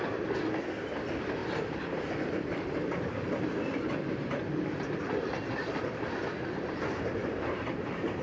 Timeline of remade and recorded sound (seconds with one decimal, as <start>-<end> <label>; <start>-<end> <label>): 0.0-1.4 recorded; 1.4-5.9 remade; 5.9-7.2 recorded; 7.2-8.2 remade